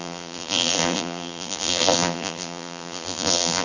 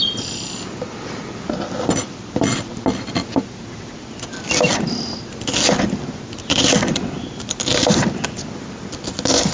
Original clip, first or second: second